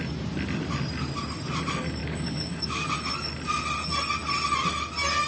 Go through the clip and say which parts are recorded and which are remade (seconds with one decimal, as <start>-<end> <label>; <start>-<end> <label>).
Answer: 0.0-2.0 recorded; 2.0-2.9 remade; 2.9-5.3 recorded